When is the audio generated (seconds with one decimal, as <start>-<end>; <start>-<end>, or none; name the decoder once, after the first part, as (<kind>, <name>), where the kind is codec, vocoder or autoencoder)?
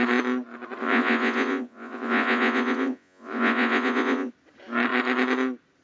0.8-4.3 (vocoder, Vocos)